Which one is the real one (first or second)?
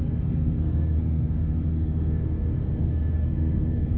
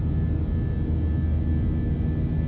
second